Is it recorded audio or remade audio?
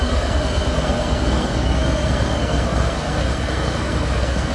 remade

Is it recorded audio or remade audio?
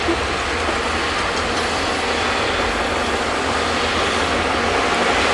recorded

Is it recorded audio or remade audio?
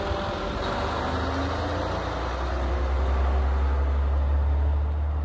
recorded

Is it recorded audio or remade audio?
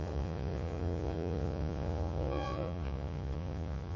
remade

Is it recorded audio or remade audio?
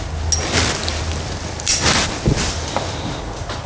recorded